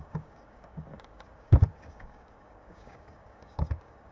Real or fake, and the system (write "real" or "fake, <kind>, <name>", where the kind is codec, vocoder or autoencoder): fake, codec, DAC